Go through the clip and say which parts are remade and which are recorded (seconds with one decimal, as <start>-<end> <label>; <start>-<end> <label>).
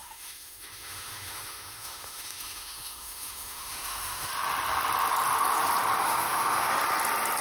0.0-4.3 remade; 4.3-6.0 recorded; 6.0-6.7 remade; 6.7-7.4 recorded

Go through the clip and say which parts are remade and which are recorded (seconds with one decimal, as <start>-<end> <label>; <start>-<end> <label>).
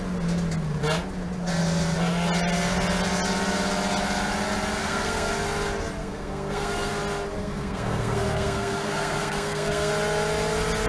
0.0-4.8 recorded; 4.8-5.3 remade; 5.3-6.0 recorded; 6.0-6.9 remade; 6.9-7.4 recorded; 7.4-9.9 remade; 9.9-10.9 recorded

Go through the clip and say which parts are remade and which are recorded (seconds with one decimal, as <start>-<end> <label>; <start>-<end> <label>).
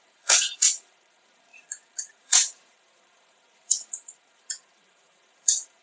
0.0-5.8 remade